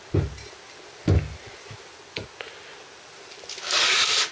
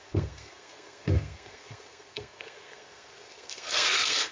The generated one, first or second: second